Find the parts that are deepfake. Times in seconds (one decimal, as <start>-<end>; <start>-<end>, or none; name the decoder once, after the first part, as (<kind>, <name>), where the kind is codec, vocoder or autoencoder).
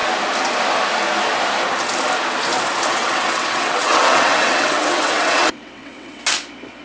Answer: 3.0-6.2 (vocoder, WaveNeXt)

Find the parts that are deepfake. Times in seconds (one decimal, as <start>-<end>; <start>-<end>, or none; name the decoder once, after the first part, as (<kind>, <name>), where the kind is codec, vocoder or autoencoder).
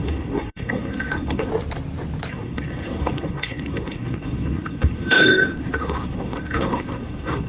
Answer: 0.0-1.5 (codec, SNAC); 2.3-7.5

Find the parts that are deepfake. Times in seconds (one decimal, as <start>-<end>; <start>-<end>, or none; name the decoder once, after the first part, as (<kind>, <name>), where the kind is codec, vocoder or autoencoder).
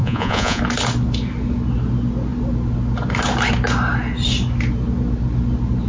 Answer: 0.0-0.6 (vocoder, Vocos)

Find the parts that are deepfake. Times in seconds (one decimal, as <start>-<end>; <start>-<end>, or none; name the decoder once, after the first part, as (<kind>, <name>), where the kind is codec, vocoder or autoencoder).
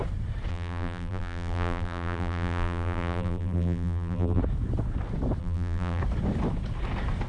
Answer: 0.5-4.4 (vocoder, BigVGAN v2); 5.4-6.0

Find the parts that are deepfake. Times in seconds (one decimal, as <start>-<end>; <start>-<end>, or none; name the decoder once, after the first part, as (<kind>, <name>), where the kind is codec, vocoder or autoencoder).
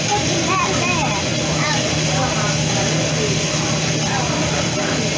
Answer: none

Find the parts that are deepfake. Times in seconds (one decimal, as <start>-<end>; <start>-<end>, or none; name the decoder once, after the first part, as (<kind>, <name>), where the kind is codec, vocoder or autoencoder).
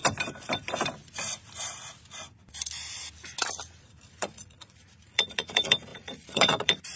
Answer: 4.2-7.0 (vocoder, Vocos)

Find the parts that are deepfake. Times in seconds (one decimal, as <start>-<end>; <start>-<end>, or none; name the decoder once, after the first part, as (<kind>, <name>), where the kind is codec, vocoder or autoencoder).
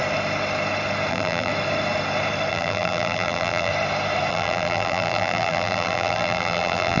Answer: 1.1-1.5 (vocoder, BigVGAN v2); 2.5-3.7; 4.3-7.0